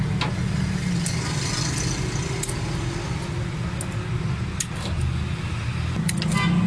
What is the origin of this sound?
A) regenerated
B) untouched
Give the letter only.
B